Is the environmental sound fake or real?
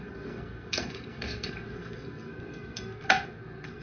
fake